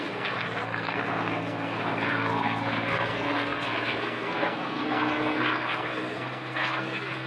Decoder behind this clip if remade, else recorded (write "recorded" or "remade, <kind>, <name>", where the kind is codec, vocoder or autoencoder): remade, codec, SNAC